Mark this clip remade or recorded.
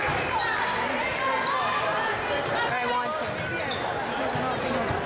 recorded